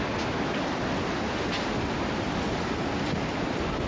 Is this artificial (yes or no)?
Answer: no